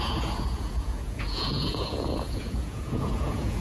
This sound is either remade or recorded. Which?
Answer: remade